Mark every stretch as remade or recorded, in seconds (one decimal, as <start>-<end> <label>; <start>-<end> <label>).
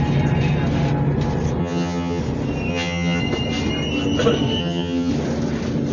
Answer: 0.0-1.6 recorded; 1.6-2.2 remade; 2.2-2.7 recorded; 2.7-3.2 remade; 3.2-4.6 recorded; 4.6-5.1 remade; 5.1-5.9 recorded